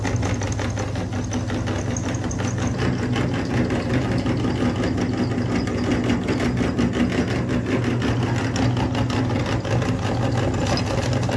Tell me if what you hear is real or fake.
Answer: real